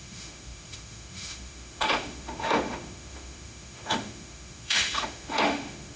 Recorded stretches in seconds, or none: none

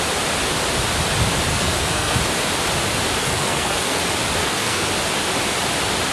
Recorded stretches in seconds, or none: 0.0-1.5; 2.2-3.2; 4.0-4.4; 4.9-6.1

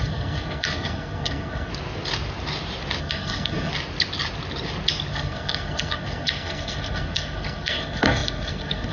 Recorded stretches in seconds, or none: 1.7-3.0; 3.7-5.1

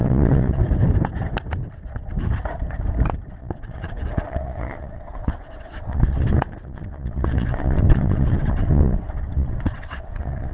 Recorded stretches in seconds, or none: 0.6-3.3

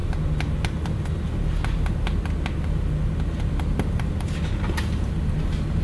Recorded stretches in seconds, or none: 0.0-5.8